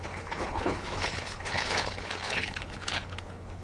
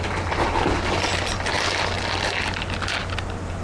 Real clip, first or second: second